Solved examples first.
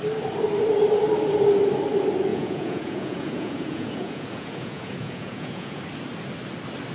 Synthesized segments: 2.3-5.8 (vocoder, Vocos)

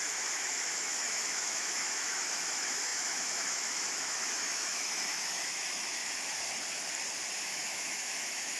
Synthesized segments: 0.0-6.0 (autoencoder, DAC-VAE); 7.4-8.6

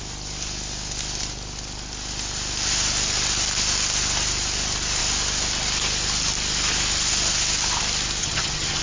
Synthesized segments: 8.2-8.8 (vocoder, HiFi-GAN)

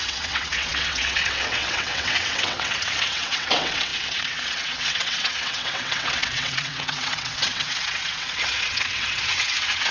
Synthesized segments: 0.0-9.9 (vocoder, WaveNeXt)

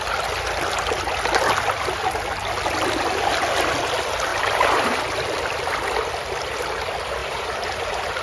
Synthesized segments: 4.3-5.0 (vocoder, BigVGAN v2); 7.2-8.2

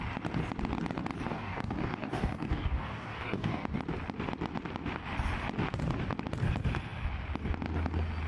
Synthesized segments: 1.3-3.8 (codec, DAC)

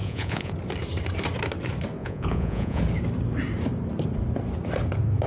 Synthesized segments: 0.0-0.5 (vocoder, Vocos); 2.0-2.8